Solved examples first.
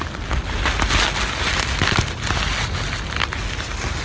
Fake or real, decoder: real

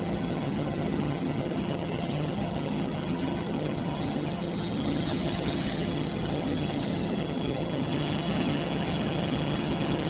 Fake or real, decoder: fake, vocoder, HiFi-GAN